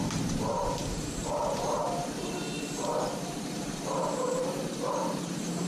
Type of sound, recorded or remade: remade